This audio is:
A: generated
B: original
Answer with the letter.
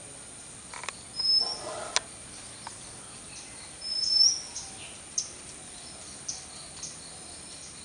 B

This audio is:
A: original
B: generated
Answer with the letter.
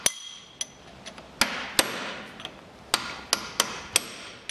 A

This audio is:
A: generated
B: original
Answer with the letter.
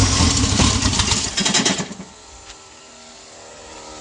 B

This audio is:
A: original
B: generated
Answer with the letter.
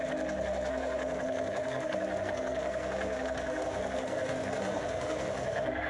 B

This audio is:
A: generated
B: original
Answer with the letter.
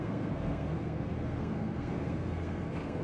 A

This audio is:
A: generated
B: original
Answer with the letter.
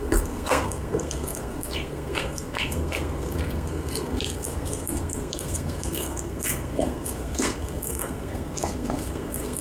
A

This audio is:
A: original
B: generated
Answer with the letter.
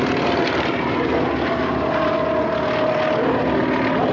A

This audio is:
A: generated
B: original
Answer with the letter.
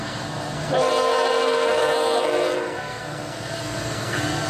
A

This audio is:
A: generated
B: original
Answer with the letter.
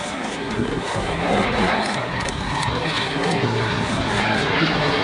A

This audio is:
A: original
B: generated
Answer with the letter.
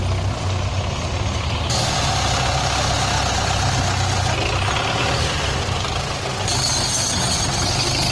A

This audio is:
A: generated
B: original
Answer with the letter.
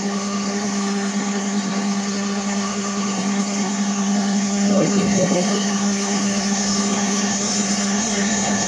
A